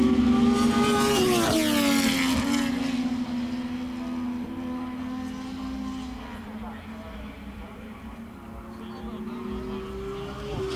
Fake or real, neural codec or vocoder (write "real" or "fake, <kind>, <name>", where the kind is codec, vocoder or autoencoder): real